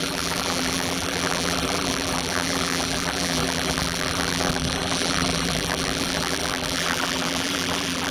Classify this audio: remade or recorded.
remade